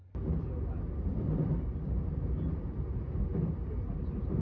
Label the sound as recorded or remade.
recorded